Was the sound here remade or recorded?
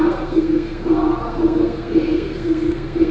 remade